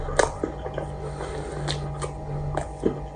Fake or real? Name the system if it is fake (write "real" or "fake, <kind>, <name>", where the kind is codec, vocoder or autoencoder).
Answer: real